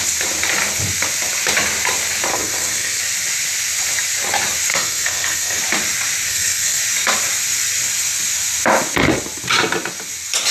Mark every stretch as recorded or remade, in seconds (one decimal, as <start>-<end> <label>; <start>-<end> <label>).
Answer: 0.0-2.3 recorded; 2.3-3.0 remade; 3.0-4.7 recorded; 4.7-5.6 remade; 5.6-6.3 recorded; 6.3-6.8 remade; 6.8-10.5 recorded